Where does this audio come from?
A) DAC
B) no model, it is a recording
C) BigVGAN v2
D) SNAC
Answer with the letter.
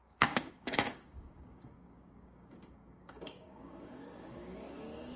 A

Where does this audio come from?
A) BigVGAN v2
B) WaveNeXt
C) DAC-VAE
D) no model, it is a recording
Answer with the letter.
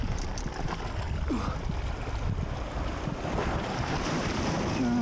D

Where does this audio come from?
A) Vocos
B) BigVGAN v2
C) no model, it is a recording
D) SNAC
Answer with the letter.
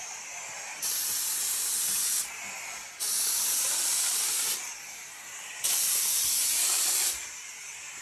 B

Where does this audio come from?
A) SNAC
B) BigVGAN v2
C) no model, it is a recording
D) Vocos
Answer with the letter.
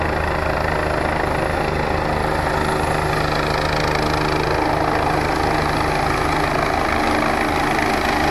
C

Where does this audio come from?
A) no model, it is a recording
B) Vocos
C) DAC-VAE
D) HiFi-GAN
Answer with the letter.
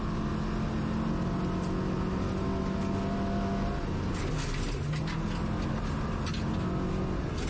A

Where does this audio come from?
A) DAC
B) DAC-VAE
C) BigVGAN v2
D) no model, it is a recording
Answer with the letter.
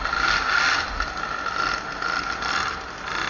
D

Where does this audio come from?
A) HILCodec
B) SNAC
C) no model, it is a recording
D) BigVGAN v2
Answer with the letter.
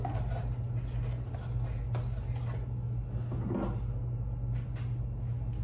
C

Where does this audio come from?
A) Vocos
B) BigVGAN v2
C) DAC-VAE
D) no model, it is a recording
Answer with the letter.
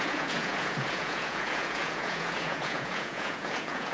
A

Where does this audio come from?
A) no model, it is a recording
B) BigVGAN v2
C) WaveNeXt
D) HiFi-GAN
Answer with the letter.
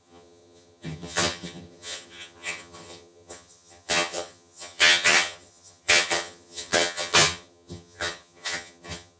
D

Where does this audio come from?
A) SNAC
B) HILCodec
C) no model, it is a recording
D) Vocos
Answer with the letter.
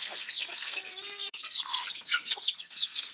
A